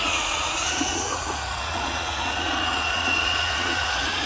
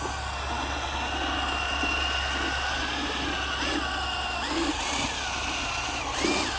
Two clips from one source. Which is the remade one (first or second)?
first